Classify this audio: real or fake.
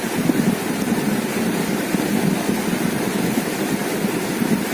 real